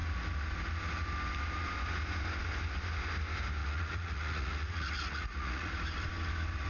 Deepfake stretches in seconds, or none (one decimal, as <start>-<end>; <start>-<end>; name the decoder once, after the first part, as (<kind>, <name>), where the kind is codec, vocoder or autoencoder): 3.6-5.7 (vocoder, Vocos)